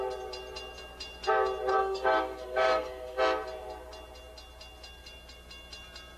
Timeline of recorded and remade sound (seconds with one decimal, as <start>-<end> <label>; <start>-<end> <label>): 0.0-1.7 recorded; 1.7-3.2 remade; 3.2-6.2 recorded